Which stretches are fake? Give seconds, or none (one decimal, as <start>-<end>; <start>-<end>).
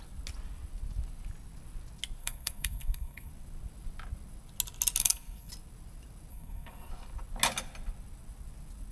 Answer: 2.2-3.3; 5.0-5.5; 6.3-6.9